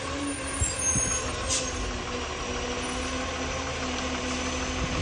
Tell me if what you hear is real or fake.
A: real